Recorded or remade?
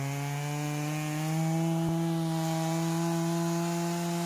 recorded